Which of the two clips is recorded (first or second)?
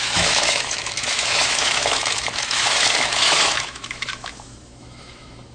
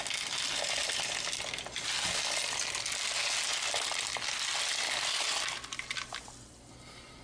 second